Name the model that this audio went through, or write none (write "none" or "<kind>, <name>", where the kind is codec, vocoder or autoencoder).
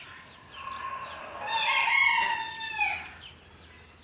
none